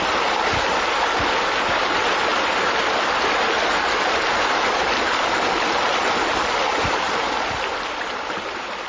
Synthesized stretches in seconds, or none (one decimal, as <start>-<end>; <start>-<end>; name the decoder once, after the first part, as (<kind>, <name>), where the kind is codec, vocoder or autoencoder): none